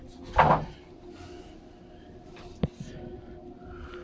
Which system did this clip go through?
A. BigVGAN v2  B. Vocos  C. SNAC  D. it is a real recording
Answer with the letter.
D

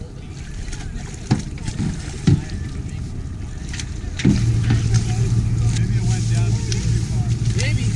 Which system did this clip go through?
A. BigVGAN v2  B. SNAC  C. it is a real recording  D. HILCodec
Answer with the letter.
C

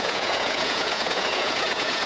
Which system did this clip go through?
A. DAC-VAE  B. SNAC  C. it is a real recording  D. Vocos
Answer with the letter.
D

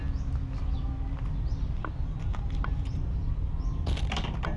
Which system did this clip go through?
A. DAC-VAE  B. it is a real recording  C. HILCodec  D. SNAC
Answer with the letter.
B